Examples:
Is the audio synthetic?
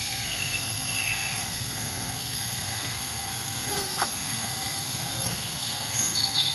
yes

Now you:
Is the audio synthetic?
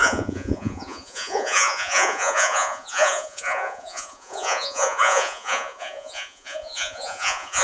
yes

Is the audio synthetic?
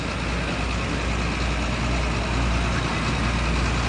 no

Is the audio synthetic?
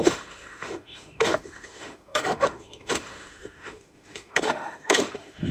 yes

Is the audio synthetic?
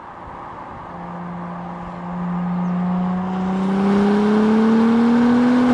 no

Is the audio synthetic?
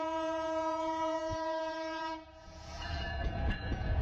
yes